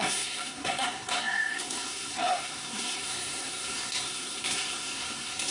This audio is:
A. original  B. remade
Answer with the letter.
B